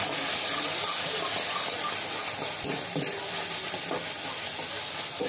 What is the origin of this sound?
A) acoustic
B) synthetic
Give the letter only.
A